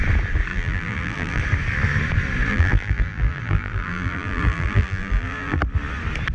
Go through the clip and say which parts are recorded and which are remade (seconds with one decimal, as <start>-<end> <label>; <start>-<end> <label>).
0.0-0.5 recorded; 0.5-1.4 remade; 1.4-2.5 recorded; 2.5-5.6 remade; 5.6-6.3 recorded